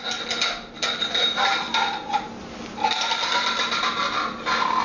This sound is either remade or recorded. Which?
recorded